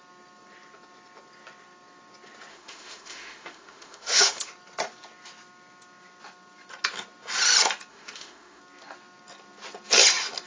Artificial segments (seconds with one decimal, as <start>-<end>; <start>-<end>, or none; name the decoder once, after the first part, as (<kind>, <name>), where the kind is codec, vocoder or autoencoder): 2.5-4.5 (autoencoder, DAC-VAE); 7.9-8.6